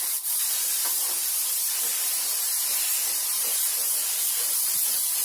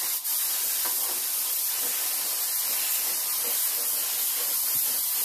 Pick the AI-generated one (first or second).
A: first